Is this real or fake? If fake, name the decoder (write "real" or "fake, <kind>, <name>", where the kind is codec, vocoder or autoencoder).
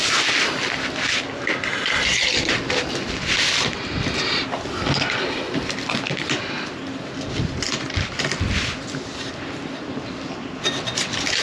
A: real